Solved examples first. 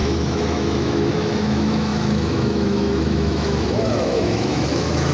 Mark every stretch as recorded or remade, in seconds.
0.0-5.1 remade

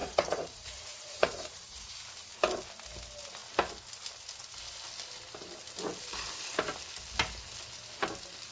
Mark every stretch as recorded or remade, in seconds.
0.0-1.9 remade; 1.9-8.5 recorded

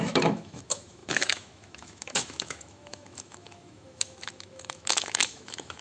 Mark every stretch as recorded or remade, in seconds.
0.0-5.8 remade

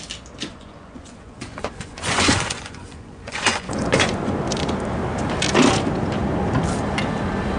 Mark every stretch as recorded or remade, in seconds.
0.0-0.5 recorded; 0.5-4.4 remade; 4.4-7.6 recorded

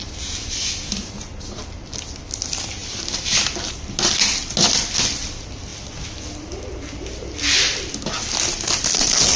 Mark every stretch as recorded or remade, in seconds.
0.0-9.4 recorded

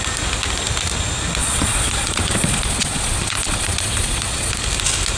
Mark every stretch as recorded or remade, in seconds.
0.0-1.4 recorded; 1.4-4.5 remade; 4.5-5.2 recorded

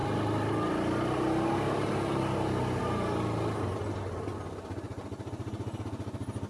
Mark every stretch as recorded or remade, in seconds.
0.0-6.5 recorded